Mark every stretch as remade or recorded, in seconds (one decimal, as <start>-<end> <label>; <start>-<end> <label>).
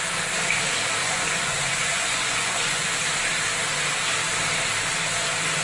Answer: 0.0-1.0 recorded; 1.0-2.9 remade; 2.9-5.6 recorded